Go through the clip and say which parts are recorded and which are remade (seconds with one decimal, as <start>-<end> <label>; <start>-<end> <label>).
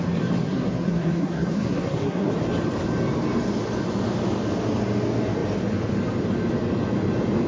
0.0-0.4 recorded; 0.4-2.3 remade; 2.3-7.5 recorded